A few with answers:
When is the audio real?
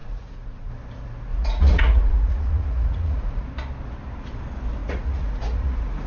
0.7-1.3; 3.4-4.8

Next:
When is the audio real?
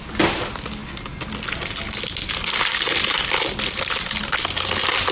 0.0-5.1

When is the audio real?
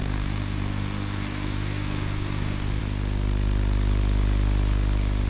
2.8-5.3